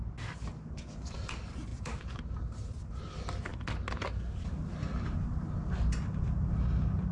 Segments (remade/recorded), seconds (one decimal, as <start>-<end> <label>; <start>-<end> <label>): 0.0-1.7 recorded; 1.7-3.1 remade; 3.1-7.1 recorded